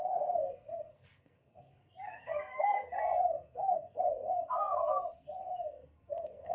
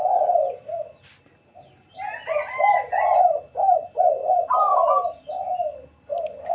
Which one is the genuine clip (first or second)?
second